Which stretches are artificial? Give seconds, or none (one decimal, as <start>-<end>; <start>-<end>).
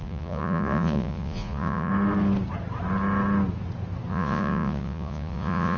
0.0-1.9; 4.1-5.8